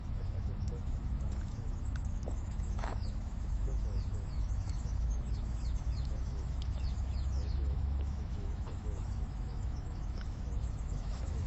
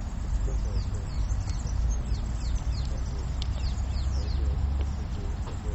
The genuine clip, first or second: second